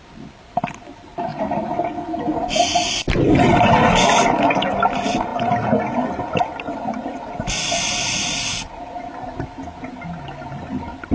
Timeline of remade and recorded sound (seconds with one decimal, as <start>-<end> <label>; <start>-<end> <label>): 0.0-11.1 recorded